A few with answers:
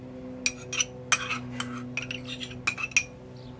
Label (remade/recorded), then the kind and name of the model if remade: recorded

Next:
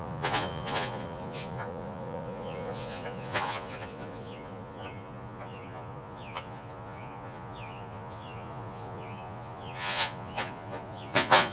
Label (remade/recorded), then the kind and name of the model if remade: remade, vocoder, Vocos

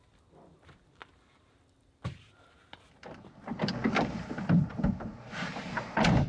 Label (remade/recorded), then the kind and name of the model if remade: recorded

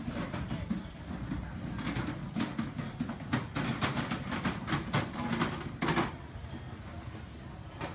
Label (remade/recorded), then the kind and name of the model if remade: recorded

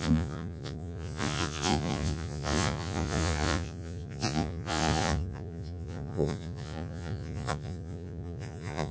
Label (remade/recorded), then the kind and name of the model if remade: remade, vocoder, Vocos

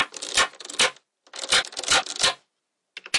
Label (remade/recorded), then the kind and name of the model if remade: recorded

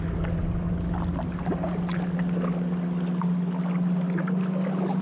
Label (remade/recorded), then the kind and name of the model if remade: recorded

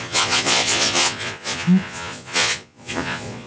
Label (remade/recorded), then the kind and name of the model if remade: remade, vocoder, Vocos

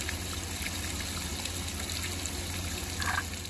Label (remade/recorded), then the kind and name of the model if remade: recorded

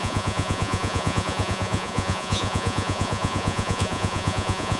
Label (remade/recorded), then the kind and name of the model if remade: remade, vocoder, Vocos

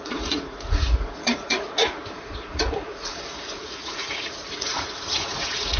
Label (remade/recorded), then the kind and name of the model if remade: remade, vocoder, Vocos